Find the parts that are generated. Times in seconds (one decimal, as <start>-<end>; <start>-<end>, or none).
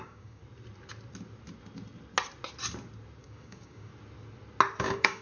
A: 0.0-0.4; 3.2-3.9; 4.8-5.2